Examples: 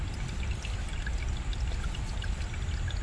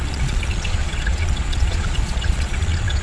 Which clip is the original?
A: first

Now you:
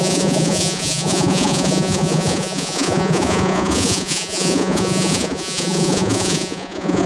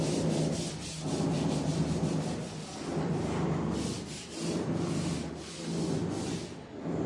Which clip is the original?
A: second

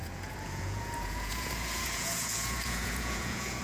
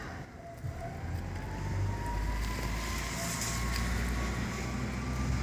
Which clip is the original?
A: second